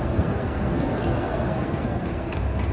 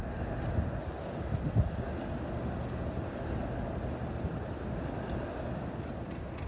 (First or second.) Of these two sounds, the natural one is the second